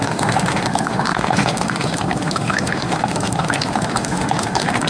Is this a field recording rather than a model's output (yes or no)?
no